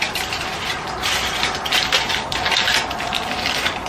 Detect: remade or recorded recorded